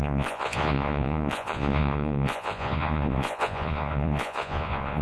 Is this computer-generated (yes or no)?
yes